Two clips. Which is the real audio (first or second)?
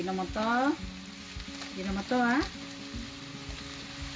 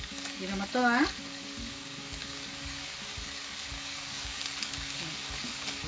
first